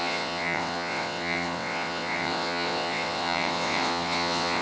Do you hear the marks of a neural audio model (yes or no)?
yes